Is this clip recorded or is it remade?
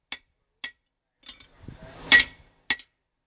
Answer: recorded